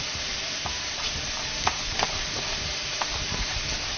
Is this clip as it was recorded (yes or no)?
no